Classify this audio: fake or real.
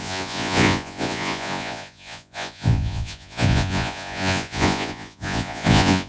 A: fake